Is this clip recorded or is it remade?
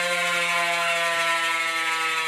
recorded